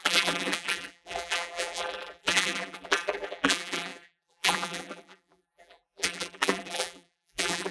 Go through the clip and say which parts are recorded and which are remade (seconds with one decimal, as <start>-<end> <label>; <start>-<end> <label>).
0.0-7.7 remade